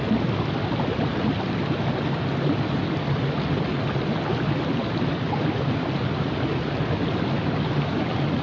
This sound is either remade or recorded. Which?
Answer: recorded